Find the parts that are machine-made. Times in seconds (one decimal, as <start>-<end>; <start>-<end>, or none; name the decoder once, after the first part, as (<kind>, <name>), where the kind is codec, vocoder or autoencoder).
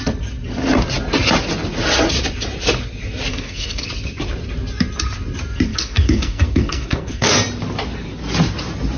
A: 3.3-3.9 (codec, SNAC); 5.7-7.3